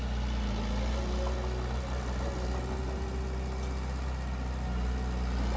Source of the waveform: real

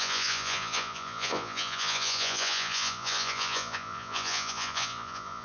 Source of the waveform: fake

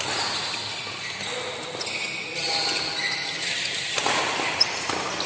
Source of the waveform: real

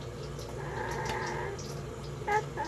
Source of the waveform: real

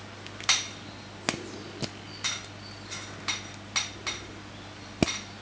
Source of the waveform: real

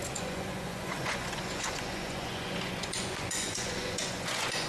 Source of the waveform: fake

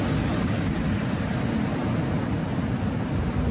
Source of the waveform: real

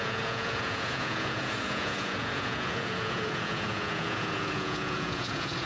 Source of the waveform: fake